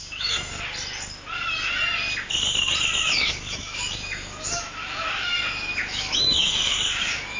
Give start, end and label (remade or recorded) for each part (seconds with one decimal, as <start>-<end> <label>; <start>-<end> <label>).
0.0-0.5 remade; 0.5-3.0 recorded; 3.0-7.4 remade